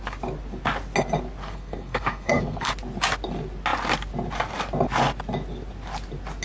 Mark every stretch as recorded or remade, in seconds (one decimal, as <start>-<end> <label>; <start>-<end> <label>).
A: 0.0-1.4 recorded; 1.4-2.7 remade; 2.7-6.4 recorded